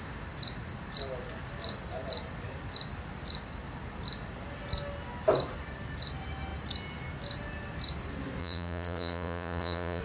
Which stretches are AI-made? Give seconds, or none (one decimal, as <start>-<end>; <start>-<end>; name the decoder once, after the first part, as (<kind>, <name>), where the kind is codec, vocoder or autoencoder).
8.4-10.0 (vocoder, Vocos)